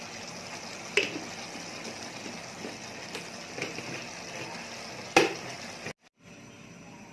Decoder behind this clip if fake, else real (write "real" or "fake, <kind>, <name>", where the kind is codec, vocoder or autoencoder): real